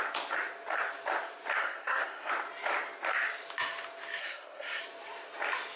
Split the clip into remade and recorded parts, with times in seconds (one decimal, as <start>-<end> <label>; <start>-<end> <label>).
0.0-1.6 recorded; 1.6-2.3 remade; 2.3-4.2 recorded; 4.2-4.8 remade; 4.8-5.8 recorded